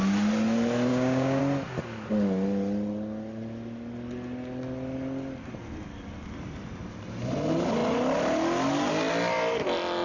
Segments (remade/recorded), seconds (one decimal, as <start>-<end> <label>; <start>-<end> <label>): 0.0-0.9 recorded; 0.9-1.4 remade; 1.4-10.0 recorded